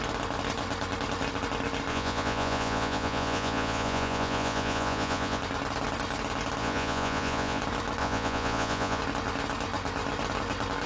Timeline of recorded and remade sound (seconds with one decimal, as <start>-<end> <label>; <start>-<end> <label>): 0.0-1.9 recorded; 1.9-5.4 remade; 5.4-6.6 recorded; 6.6-7.6 remade; 7.6-8.0 recorded; 8.0-9.0 remade; 9.0-10.9 recorded